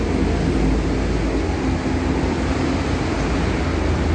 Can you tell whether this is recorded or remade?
recorded